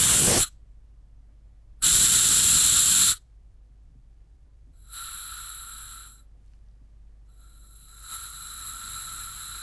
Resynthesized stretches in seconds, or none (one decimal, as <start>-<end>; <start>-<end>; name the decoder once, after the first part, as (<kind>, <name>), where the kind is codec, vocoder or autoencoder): 2.8-4.8 (vocoder, BigVGAN v2); 8.2-8.8